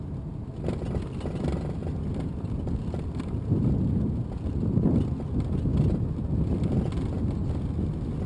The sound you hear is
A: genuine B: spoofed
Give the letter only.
A